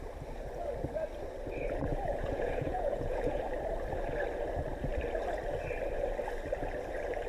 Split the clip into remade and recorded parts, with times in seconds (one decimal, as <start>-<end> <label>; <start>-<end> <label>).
0.0-1.9 recorded; 1.9-3.4 remade; 3.4-7.3 recorded